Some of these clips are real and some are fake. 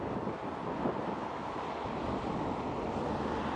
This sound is real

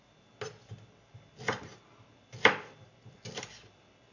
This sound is real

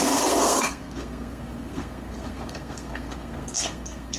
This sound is fake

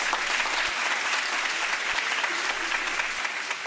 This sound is real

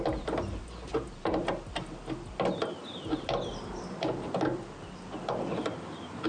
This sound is real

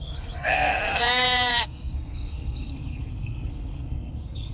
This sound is fake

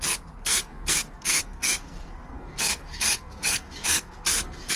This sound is fake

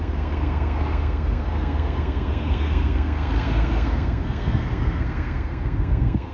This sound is fake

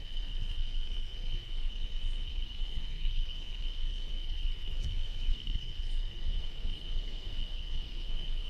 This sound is fake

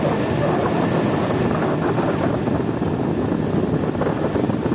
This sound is real